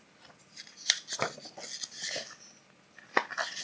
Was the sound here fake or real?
real